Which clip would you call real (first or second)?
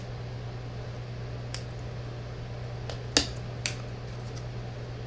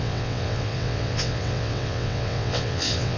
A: first